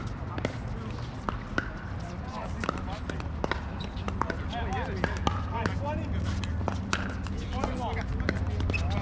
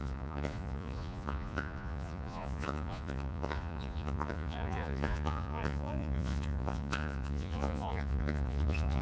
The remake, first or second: second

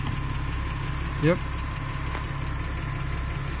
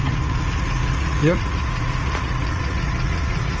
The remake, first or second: second